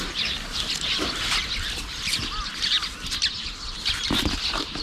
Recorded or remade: recorded